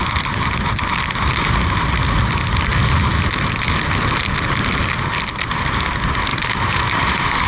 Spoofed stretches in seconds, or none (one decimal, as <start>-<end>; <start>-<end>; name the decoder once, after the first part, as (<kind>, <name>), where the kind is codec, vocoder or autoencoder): 6.3-7.1 (vocoder, BigVGAN v2)